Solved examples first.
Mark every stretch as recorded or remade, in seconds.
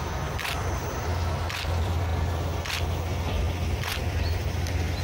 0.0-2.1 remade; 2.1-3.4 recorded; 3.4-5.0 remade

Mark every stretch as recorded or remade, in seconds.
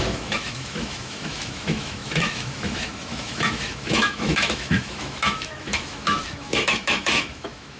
0.0-7.8 remade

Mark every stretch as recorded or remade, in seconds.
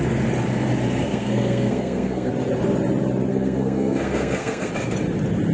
0.0-1.0 recorded; 1.0-2.3 remade; 2.3-3.3 recorded; 3.3-4.7 remade; 4.7-5.5 recorded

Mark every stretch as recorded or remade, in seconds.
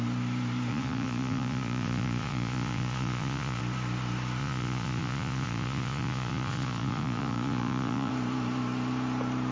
0.0-0.7 recorded; 0.7-3.6 remade; 3.6-4.4 recorded; 4.4-8.1 remade; 8.1-9.5 recorded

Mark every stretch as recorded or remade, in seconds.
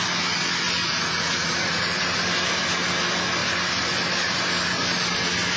0.0-0.8 recorded; 0.8-2.0 remade; 2.0-5.6 recorded